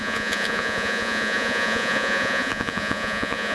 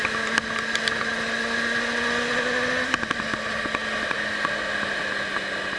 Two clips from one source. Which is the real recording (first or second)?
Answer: second